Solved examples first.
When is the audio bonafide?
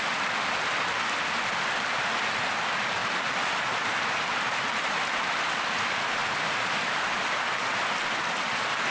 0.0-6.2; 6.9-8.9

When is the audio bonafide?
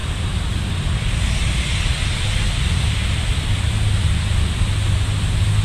0.9-5.6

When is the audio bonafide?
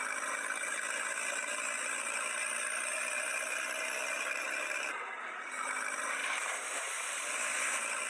0.0-6.2; 7.2-8.1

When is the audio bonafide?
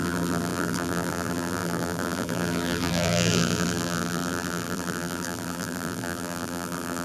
none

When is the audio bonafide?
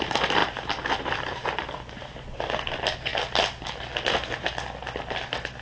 0.0-0.4; 2.4-5.6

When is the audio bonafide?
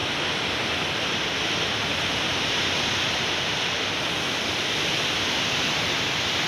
0.0-6.5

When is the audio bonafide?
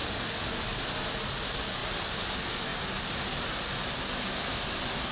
1.4-5.1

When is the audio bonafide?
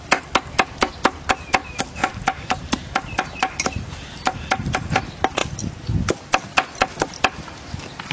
0.0-1.6; 5.0-8.1